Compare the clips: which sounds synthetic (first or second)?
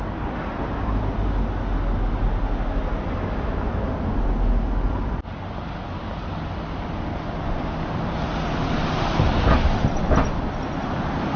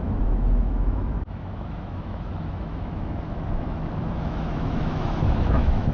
second